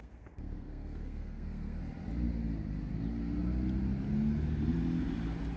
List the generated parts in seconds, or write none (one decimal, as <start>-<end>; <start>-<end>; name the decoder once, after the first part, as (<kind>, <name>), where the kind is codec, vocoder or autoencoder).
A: 0.0-1.8 (codec, SNAC)